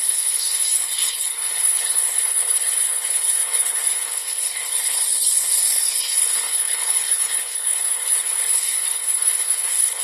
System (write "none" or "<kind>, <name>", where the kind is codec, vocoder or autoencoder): codec, HILCodec